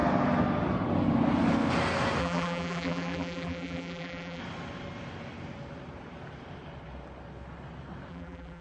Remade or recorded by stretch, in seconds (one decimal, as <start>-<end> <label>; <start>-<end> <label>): 0.0-2.2 recorded; 2.2-4.4 remade; 4.4-8.1 recorded; 8.1-8.6 remade